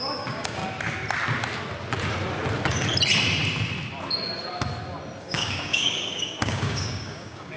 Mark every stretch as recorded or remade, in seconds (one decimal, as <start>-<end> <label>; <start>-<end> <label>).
0.0-0.6 remade; 0.6-5.2 recorded; 5.2-7.6 remade